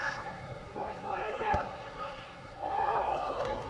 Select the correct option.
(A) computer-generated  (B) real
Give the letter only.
A